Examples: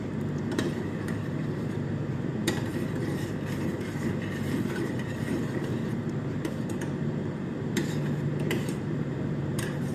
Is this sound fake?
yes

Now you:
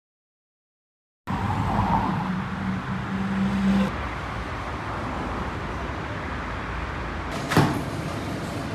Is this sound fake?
no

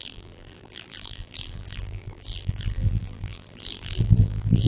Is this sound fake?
yes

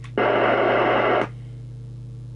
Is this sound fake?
no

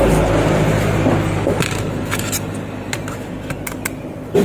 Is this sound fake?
no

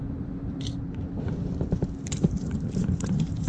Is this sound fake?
yes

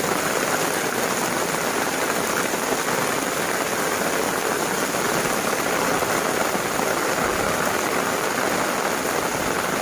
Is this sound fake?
no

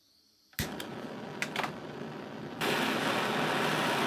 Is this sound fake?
no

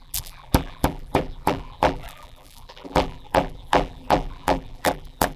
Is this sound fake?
yes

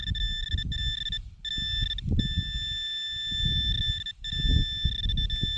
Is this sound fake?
no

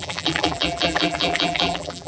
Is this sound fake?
yes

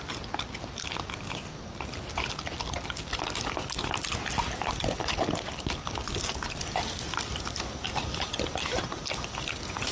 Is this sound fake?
no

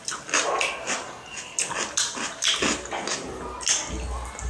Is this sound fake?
no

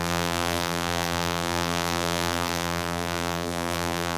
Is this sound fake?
yes